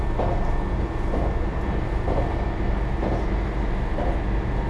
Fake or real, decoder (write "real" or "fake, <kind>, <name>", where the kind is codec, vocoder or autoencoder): real